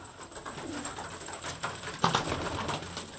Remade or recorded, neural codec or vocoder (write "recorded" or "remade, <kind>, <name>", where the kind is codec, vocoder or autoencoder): recorded